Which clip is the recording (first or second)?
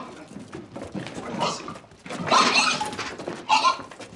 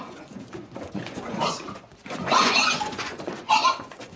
first